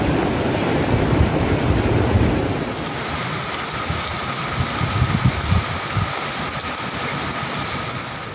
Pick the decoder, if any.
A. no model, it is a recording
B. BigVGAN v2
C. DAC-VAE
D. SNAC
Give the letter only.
A